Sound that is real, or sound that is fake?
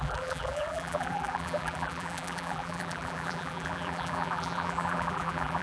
fake